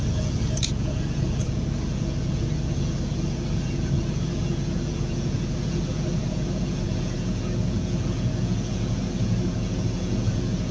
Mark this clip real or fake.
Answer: fake